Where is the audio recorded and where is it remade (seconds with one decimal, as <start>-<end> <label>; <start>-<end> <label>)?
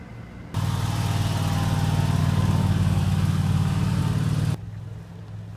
0.0-2.2 recorded; 2.2-4.0 remade; 4.0-5.6 recorded